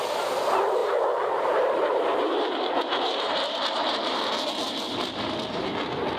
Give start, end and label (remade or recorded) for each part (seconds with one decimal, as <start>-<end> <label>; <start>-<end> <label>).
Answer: 0.0-0.8 recorded; 0.8-4.5 remade; 4.5-6.2 recorded